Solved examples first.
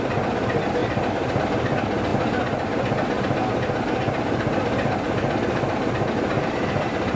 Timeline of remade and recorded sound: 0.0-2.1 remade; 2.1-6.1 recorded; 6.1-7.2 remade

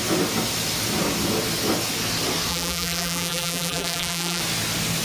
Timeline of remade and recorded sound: 0.0-2.5 recorded; 2.5-4.4 remade; 4.4-5.0 recorded

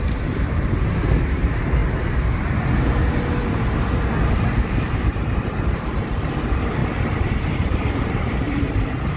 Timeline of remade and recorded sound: 0.0-1.8 remade; 1.8-4.3 recorded; 4.3-9.2 remade